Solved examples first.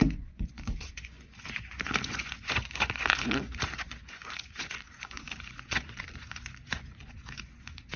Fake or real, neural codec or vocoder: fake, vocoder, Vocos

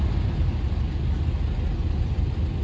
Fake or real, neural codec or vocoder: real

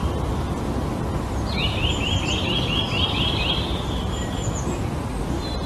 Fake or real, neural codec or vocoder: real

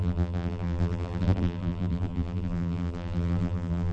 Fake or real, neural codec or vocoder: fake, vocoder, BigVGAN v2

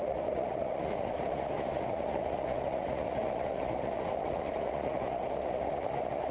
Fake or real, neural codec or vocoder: fake, vocoder, Vocos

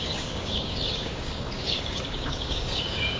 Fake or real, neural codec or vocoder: fake, codec, DAC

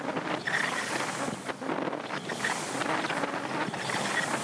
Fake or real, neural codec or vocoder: real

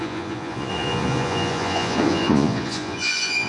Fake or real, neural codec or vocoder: fake, vocoder, Vocos